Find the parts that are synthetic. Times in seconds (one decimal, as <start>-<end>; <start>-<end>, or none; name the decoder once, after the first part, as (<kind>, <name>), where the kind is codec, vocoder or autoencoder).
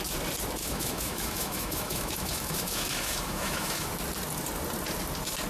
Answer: 0.6-3.9 (autoencoder, DAC-VAE)